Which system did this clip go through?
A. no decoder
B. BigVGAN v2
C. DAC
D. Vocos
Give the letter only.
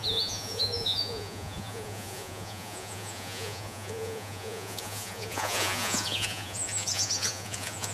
D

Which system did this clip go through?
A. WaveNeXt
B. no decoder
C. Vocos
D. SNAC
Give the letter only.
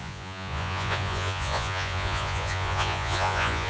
C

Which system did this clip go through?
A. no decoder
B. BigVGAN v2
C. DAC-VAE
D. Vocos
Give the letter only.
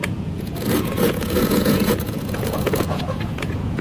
D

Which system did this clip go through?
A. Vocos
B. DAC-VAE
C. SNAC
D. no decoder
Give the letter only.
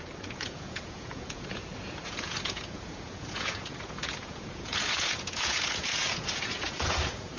A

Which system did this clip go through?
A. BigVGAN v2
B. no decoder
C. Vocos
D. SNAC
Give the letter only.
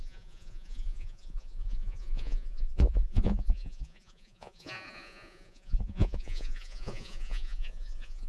C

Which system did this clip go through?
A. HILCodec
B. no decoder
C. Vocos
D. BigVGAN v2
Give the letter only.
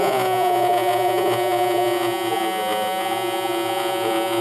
C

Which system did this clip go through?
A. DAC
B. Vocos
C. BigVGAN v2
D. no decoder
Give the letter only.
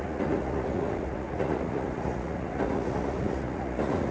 B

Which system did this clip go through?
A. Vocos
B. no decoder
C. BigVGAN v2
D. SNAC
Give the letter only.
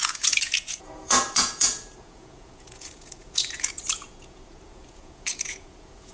A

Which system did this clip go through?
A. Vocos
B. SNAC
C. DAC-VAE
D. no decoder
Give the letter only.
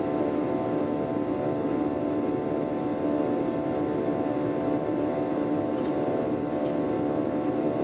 D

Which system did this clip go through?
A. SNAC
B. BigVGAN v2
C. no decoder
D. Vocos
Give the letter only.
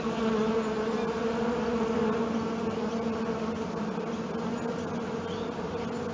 C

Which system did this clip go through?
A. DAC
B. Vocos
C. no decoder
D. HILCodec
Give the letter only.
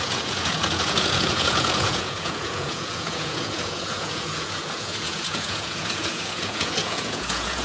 B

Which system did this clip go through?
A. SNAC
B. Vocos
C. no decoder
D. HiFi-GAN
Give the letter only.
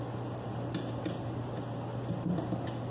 C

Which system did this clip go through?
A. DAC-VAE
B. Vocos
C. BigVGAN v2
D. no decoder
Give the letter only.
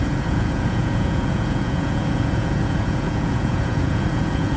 B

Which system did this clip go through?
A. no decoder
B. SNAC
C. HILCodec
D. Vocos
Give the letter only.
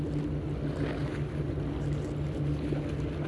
A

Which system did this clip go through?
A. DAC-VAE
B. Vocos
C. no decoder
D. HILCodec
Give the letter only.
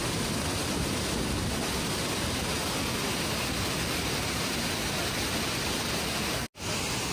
C